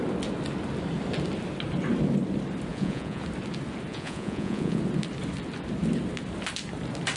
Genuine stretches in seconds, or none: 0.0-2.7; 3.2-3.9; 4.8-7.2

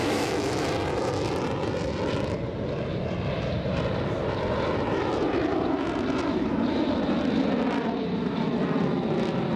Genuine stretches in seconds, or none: 0.7-9.6